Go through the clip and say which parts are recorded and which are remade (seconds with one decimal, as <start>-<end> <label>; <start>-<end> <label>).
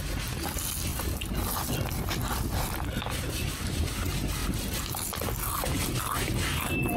0.0-0.9 recorded; 0.9-3.8 remade; 3.8-7.0 recorded